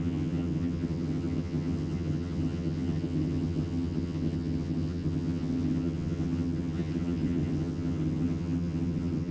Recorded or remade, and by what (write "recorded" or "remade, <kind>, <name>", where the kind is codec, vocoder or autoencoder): remade, vocoder, HiFi-GAN